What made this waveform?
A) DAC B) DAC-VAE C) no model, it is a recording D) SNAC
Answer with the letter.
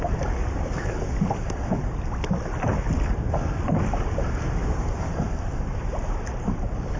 C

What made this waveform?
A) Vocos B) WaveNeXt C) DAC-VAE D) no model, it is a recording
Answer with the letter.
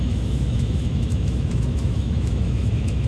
C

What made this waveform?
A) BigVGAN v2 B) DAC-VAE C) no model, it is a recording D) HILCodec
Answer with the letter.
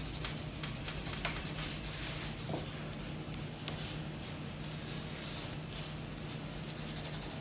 C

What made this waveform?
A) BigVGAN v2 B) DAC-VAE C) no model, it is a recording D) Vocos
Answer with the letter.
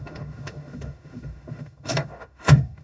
B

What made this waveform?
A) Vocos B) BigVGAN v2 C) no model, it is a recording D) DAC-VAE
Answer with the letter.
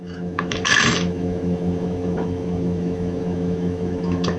D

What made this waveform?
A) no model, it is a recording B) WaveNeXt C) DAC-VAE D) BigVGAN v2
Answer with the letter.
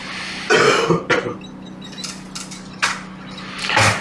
A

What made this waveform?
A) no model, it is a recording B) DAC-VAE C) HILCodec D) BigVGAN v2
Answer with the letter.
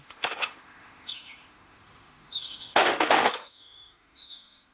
B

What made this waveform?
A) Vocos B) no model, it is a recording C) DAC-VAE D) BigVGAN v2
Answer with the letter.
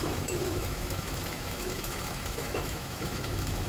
C